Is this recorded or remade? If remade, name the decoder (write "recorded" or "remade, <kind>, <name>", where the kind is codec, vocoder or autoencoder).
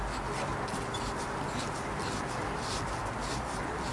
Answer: recorded